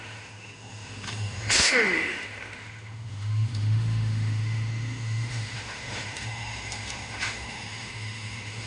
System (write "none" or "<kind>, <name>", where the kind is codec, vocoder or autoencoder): autoencoder, DAC-VAE